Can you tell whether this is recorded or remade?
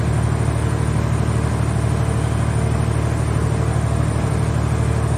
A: recorded